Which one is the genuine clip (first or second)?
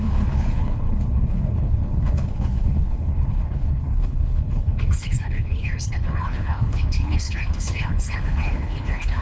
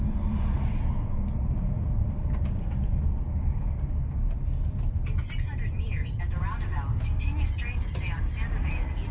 second